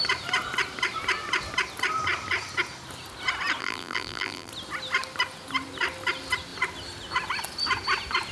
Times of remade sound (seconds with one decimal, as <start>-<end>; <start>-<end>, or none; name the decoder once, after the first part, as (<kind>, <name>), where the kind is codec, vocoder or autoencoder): 3.6-4.5 (vocoder, BigVGAN v2)